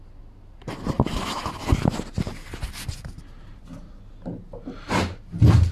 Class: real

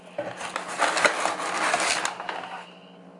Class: real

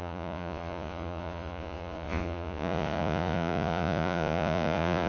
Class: fake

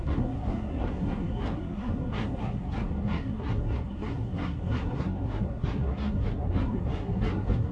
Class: fake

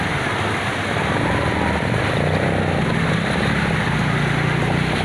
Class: real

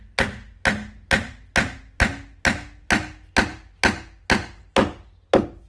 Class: real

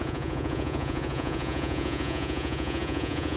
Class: fake